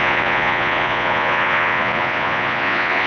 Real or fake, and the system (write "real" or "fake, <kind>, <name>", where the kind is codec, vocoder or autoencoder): fake, vocoder, Vocos